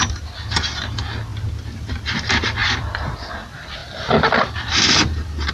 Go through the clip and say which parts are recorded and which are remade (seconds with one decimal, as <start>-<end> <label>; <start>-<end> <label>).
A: 0.0-1.3 recorded; 1.3-1.9 remade; 1.9-2.6 recorded; 2.6-3.3 remade; 3.3-5.5 recorded